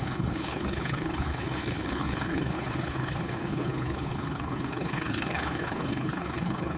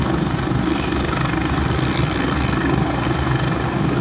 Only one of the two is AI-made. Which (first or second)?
first